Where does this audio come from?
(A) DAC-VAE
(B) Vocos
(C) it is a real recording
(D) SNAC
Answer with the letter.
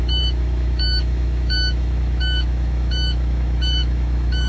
A